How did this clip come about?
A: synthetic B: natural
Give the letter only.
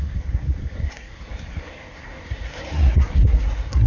A